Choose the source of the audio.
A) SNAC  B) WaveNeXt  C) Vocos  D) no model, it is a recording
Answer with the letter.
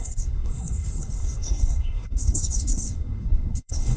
A